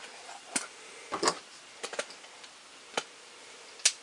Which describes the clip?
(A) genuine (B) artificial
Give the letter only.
A